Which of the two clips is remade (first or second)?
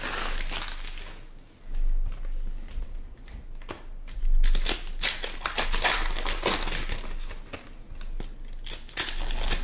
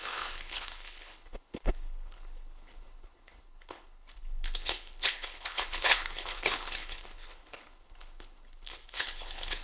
second